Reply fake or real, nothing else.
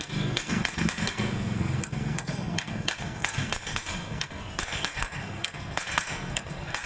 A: fake